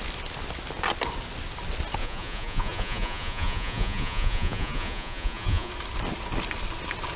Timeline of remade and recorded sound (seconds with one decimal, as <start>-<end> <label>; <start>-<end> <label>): 0.0-2.0 recorded; 2.0-5.7 remade; 5.7-7.2 recorded